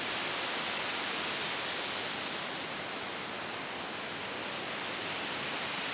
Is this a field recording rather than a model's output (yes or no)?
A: yes